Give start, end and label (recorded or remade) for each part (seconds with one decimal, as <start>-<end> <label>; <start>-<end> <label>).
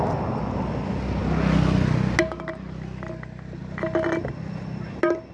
0.0-5.3 recorded